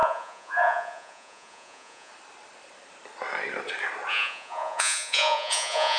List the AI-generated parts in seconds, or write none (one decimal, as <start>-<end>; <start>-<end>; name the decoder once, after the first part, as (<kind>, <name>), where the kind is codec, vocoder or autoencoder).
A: 0.0-2.1 (vocoder, Vocos); 4.1-6.0